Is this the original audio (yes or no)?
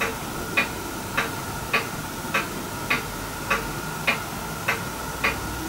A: yes